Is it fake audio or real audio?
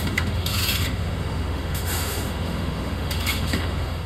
fake